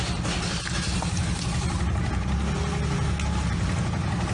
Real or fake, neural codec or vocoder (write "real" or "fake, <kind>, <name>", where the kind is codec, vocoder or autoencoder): real